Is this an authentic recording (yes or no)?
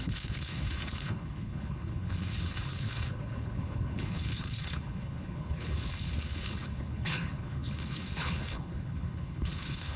no